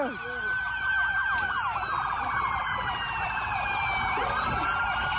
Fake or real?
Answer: real